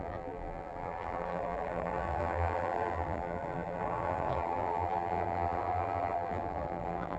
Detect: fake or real fake